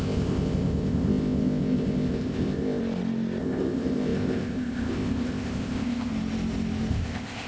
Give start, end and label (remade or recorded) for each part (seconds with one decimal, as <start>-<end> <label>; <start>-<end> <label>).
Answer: 0.0-2.8 remade; 2.8-3.4 recorded; 3.4-6.1 remade; 6.1-6.9 recorded; 6.9-7.5 remade